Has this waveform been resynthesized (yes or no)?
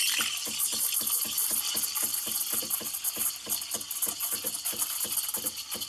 no